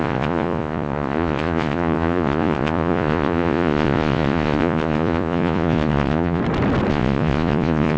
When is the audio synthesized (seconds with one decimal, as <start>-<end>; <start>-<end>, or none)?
0.0-6.4; 6.9-8.0